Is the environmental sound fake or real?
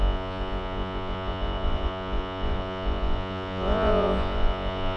fake